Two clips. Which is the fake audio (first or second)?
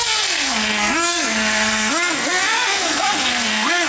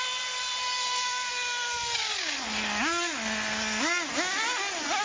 first